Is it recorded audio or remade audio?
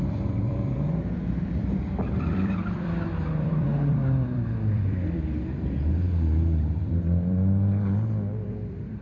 remade